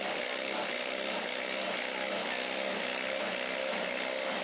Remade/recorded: recorded